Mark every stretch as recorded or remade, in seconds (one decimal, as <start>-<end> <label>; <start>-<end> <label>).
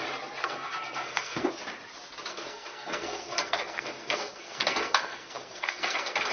0.0-0.4 recorded; 0.4-1.5 remade; 1.5-2.3 recorded; 2.3-6.3 remade